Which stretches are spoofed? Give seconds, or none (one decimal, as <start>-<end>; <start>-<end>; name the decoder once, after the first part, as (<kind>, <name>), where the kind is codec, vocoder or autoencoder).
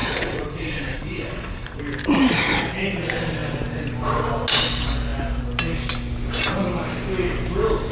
0.0-1.8 (vocoder, Vocos)